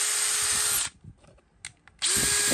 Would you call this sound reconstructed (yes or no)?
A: no